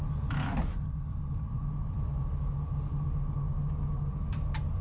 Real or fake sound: real